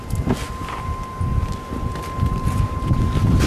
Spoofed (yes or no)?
no